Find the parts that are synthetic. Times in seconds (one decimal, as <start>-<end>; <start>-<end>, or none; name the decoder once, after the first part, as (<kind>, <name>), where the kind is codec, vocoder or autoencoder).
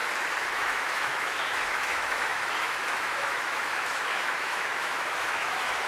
0.5-5.9 (autoencoder, DAC-VAE)